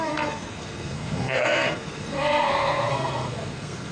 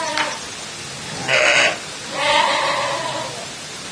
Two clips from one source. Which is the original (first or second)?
second